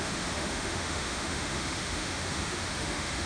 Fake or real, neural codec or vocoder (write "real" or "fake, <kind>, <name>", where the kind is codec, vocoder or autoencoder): fake, autoencoder, DAC-VAE